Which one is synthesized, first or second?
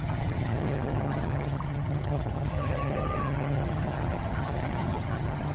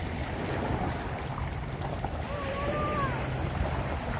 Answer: first